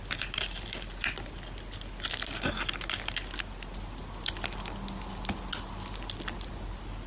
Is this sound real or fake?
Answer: real